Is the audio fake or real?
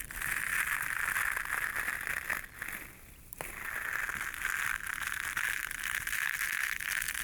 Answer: real